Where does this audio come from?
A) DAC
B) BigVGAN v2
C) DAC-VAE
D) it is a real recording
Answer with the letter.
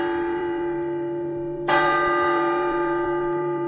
B